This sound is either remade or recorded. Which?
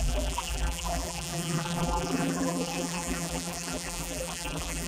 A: remade